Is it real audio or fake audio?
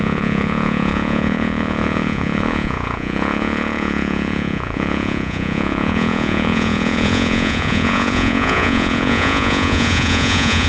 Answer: fake